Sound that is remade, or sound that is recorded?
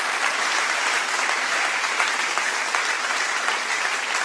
remade